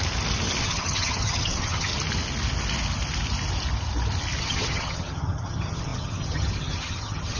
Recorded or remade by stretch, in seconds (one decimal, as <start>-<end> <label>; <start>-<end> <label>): 0.0-0.6 recorded; 0.6-1.9 remade; 1.9-4.4 recorded; 4.4-7.4 remade